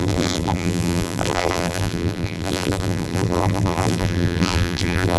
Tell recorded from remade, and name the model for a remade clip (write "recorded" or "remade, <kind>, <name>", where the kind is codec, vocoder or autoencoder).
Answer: remade, vocoder, BigVGAN v2